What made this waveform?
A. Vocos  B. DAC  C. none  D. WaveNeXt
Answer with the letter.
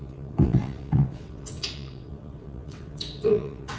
D